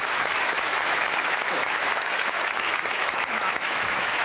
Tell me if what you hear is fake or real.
fake